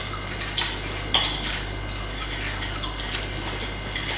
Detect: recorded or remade recorded